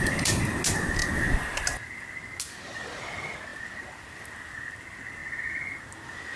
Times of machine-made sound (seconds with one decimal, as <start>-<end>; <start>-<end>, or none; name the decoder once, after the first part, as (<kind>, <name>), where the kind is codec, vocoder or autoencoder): none